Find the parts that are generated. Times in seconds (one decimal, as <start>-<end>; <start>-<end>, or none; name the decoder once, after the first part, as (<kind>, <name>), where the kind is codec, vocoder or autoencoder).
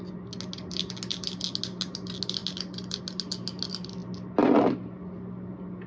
none